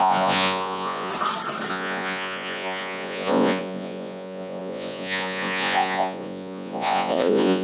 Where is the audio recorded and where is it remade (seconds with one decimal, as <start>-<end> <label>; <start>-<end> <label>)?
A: 0.0-1.1 remade; 1.1-1.7 recorded; 1.7-7.6 remade